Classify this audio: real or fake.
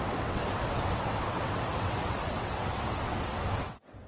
fake